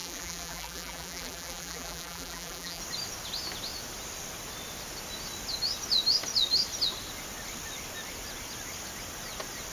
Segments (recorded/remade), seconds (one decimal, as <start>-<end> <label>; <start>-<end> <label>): 0.0-2.8 remade; 2.8-9.7 recorded